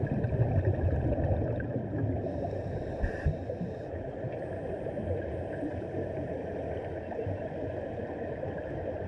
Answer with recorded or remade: remade